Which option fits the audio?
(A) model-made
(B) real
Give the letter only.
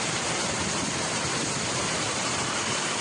A